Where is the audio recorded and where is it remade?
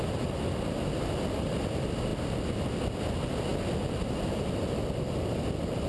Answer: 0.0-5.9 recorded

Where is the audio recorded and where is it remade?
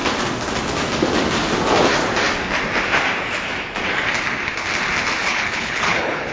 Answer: 0.0-5.2 recorded; 5.2-6.3 remade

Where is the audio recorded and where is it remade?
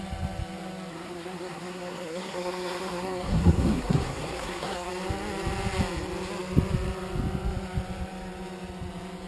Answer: 0.0-0.9 recorded; 0.9-4.9 remade; 4.9-9.3 recorded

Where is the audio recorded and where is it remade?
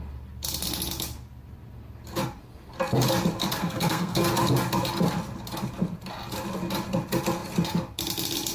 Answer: 0.0-3.6 recorded; 3.6-4.3 remade; 4.3-8.5 recorded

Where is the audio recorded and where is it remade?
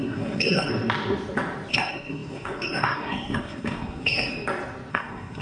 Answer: 0.0-0.7 remade; 0.7-1.7 recorded; 1.7-4.3 remade; 4.3-4.9 recorded; 4.9-5.4 remade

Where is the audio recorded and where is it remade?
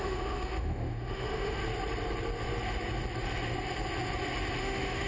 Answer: 0.0-1.6 remade; 1.6-4.6 recorded; 4.6-5.1 remade